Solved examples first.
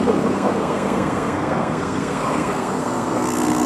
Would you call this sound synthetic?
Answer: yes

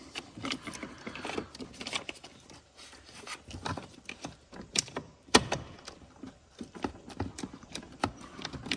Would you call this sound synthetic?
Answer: yes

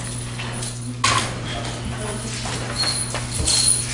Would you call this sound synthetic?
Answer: no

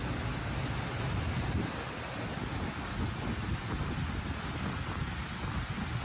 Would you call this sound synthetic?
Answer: no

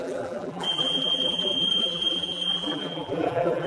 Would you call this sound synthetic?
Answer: yes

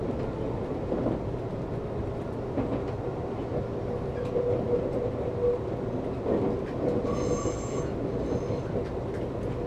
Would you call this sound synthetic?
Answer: no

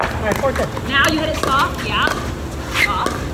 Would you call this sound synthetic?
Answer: no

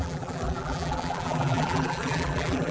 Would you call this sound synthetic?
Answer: yes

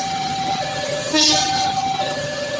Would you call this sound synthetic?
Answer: yes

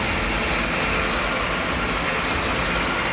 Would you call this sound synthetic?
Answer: no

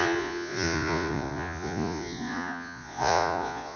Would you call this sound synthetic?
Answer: yes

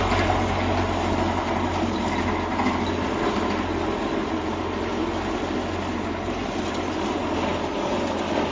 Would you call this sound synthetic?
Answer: no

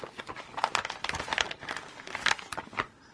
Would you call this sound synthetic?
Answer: no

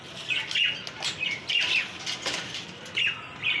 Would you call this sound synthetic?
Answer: no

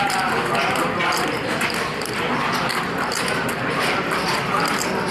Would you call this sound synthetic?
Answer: yes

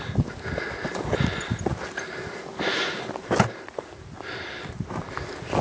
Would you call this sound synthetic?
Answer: no